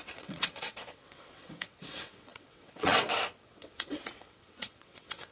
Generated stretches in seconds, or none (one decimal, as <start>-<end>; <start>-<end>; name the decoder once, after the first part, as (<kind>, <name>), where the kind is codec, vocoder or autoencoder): 0.0-5.3 (vocoder, WaveNeXt)